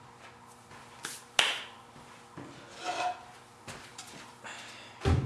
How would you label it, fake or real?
real